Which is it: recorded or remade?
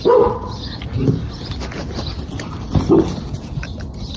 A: recorded